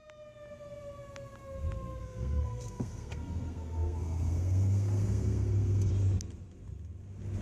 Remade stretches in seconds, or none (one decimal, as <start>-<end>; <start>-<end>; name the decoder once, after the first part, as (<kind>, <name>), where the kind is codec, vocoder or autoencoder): 2.0-5.9 (codec, SNAC)